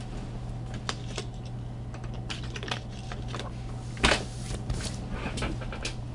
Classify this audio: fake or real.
real